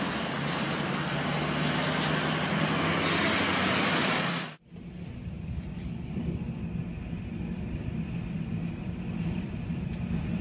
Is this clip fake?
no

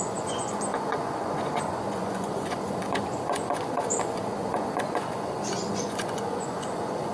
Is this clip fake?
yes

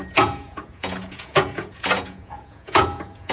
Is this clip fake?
yes